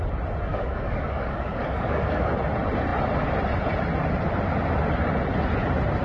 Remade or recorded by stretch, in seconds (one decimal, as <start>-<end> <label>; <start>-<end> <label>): 0.0-0.5 recorded; 0.5-2.3 remade; 2.3-6.0 recorded